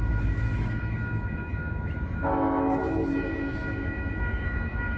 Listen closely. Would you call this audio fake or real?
fake